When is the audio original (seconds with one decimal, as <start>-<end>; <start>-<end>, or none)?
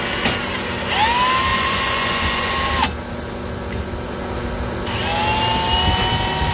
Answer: 0.0-1.5; 2.5-6.5